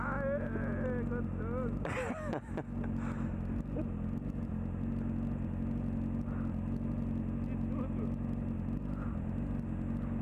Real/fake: real